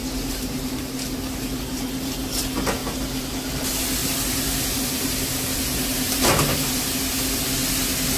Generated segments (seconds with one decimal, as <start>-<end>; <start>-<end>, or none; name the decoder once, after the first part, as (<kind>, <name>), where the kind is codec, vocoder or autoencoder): 0.0-0.7 (vocoder, BigVGAN v2); 4.0-6.9